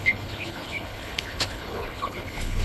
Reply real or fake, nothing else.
fake